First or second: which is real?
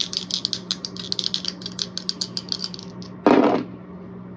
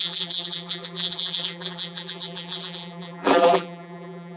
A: first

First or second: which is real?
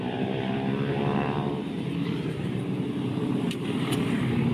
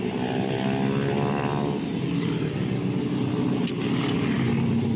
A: second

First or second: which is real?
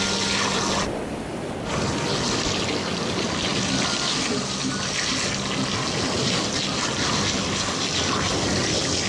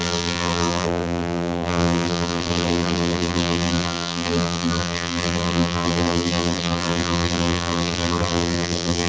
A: first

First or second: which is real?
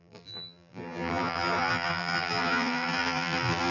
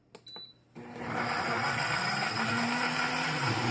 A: second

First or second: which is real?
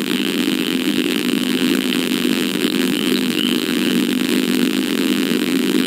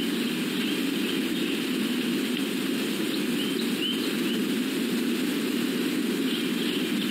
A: second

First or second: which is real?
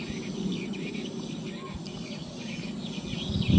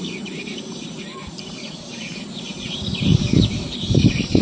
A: first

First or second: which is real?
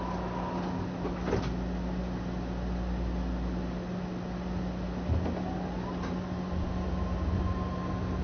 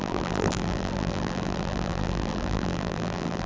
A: first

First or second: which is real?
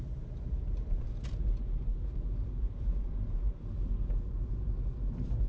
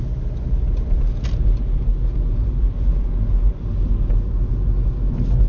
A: second